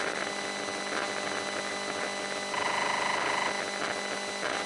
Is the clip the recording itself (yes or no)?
yes